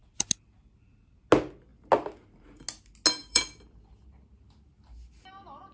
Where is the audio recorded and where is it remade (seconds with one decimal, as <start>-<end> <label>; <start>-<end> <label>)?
0.0-3.2 recorded; 3.2-3.9 remade; 3.9-5.7 recorded